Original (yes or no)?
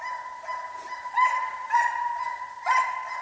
yes